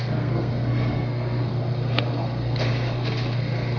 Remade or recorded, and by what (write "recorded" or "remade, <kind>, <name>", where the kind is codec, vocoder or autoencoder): remade, codec, SNAC